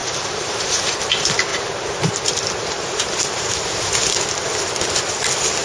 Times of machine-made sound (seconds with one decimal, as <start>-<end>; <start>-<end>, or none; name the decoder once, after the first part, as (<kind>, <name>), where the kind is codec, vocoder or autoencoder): 0.0-0.9 (vocoder, BigVGAN v2); 1.5-3.9